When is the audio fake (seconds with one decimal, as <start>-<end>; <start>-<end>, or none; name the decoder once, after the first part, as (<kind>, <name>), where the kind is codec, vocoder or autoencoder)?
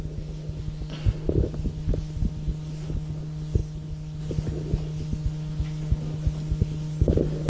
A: none